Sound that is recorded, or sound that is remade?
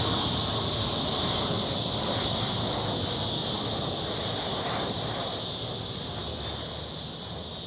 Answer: recorded